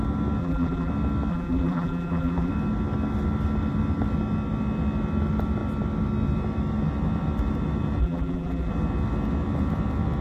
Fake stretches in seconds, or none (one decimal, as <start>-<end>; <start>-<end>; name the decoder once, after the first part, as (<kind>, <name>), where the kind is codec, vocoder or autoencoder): 0.4-0.9 (vocoder, BigVGAN v2); 1.3-2.5; 8.0-8.7